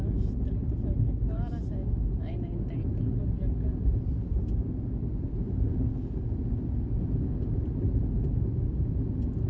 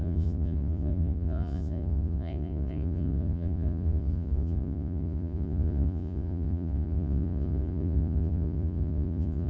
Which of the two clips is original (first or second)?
first